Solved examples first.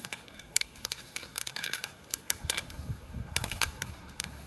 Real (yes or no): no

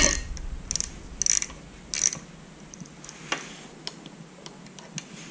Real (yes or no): yes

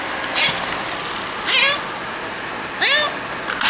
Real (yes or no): yes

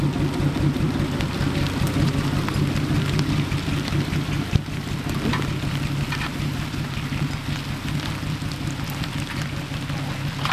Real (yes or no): yes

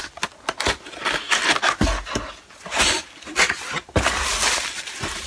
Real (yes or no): yes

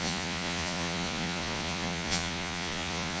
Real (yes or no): no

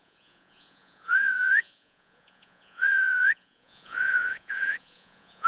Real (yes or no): no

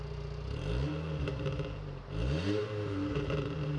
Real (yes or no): no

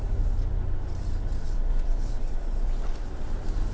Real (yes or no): yes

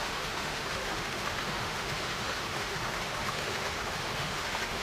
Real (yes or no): no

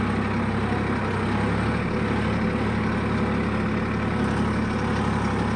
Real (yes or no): yes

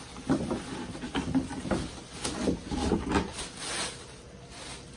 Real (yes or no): yes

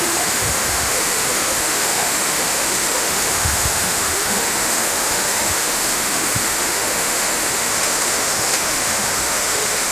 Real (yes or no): no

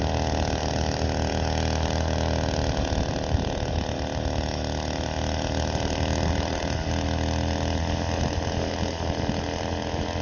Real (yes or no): yes